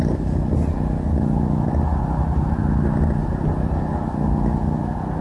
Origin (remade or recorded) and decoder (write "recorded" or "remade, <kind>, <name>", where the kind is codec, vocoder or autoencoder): recorded